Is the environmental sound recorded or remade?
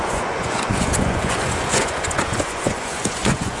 remade